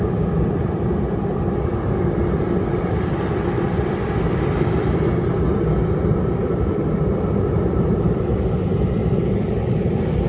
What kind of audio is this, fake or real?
real